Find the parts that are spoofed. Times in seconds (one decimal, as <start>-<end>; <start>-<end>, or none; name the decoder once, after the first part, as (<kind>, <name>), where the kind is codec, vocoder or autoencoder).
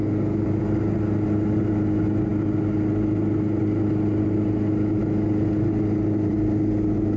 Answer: none